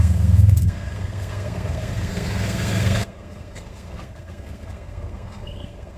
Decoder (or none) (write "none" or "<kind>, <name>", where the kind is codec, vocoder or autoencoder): codec, SNAC